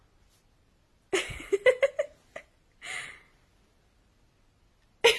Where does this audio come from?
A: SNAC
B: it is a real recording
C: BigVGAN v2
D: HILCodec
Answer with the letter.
B